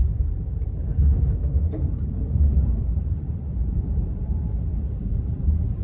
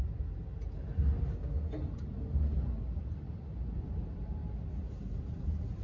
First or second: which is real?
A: second